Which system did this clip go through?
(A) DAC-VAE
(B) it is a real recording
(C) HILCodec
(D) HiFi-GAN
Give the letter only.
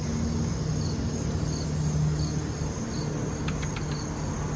B